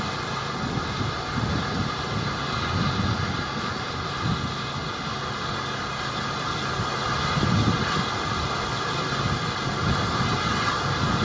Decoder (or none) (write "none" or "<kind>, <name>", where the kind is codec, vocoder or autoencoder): none